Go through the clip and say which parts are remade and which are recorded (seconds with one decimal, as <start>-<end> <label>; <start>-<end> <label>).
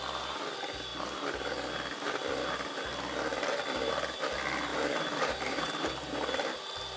0.0-4.7 recorded; 4.7-5.9 remade; 5.9-7.0 recorded